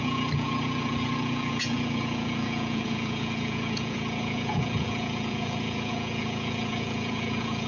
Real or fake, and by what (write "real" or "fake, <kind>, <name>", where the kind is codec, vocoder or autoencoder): fake, vocoder, Vocos